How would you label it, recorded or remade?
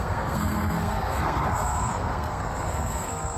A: remade